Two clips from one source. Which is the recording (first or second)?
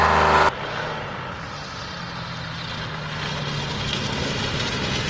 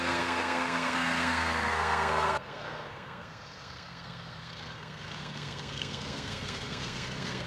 first